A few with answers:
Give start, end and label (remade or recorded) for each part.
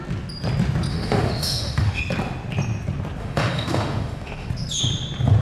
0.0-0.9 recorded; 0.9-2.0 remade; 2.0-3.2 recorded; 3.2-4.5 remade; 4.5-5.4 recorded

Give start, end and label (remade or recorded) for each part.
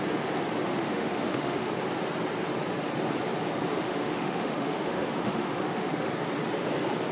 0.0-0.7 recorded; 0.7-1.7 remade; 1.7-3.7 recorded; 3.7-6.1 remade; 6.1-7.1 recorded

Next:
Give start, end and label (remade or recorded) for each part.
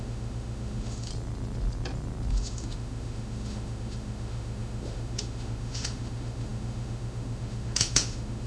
0.0-1.1 remade; 1.1-2.3 recorded; 2.3-8.5 remade